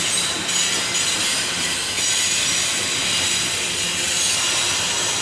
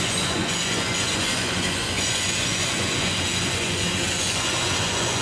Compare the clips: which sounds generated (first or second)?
second